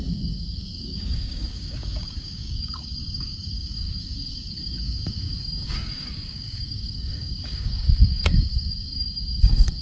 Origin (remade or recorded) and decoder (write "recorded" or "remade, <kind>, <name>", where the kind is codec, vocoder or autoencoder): remade, codec, DAC